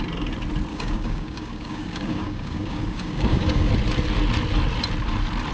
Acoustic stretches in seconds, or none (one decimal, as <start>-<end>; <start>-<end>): 0.0-0.7; 3.7-5.5

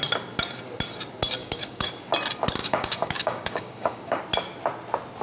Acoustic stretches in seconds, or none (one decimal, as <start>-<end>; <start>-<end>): 0.0-1.4; 1.9-2.6; 4.2-5.2

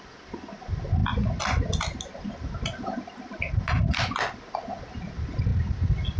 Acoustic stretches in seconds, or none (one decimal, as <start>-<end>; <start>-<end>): 0.0-6.2

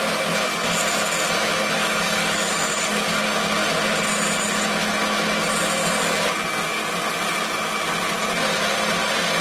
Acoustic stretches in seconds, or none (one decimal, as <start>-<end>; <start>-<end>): 0.0-1.8; 3.2-9.4

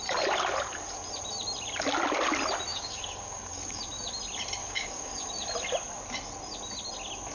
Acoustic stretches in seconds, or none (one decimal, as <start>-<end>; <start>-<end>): 0.0-2.7; 3.8-4.6; 5.3-7.3

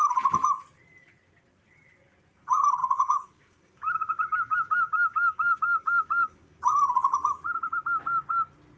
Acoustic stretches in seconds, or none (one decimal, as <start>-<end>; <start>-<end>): 0.0-2.8; 6.6-8.8

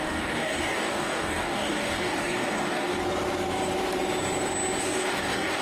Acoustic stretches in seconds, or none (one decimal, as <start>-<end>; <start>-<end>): 3.0-4.8

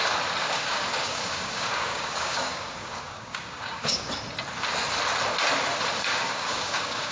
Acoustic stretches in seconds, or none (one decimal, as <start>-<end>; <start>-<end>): 0.0-0.4; 4.1-6.1